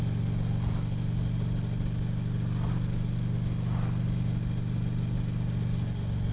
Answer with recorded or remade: recorded